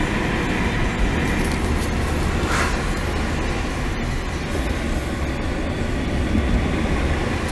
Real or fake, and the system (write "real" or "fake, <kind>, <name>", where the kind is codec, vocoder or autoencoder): real